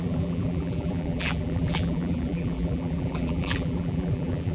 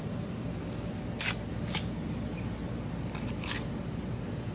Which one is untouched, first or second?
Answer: second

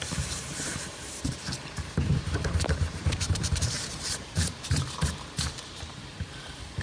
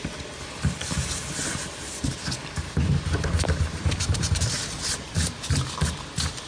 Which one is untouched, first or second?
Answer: second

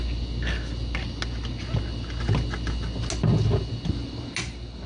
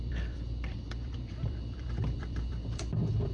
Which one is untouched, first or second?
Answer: first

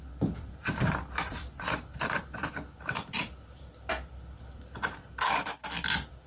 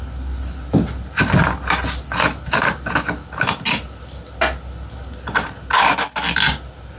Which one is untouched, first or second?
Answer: second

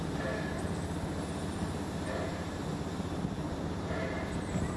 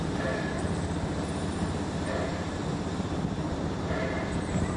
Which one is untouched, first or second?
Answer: first